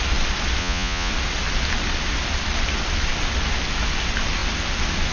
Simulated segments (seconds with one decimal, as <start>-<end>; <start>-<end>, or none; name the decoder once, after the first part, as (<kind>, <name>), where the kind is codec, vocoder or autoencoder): 0.6-1.1 (vocoder, Vocos)